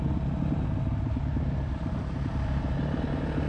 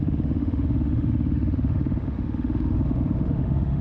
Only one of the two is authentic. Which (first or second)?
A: first